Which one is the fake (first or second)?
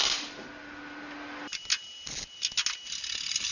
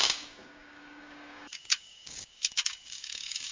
second